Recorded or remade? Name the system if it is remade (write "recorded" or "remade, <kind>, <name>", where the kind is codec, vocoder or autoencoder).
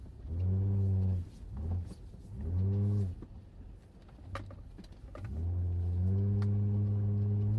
recorded